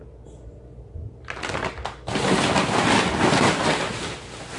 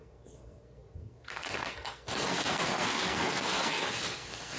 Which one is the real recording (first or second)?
first